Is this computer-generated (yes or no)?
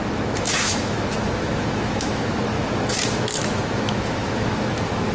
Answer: yes